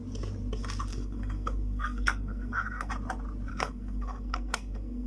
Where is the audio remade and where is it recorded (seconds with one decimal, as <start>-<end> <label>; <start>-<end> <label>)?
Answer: 0.0-0.9 recorded; 0.9-2.9 remade; 2.9-3.5 recorded; 3.5-5.1 remade